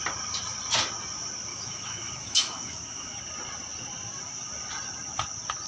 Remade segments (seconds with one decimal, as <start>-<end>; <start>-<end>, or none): 1.5-3.2